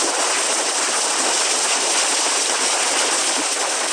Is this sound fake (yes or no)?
no